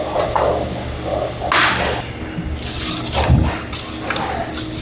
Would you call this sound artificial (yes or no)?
no